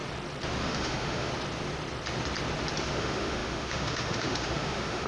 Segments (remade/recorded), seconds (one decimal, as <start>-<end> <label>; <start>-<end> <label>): 0.0-0.6 recorded; 0.6-1.3 remade; 1.3-3.0 recorded; 3.0-5.1 remade